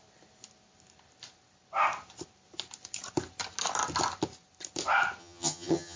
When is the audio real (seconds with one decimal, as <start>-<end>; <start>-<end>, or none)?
0.0-5.2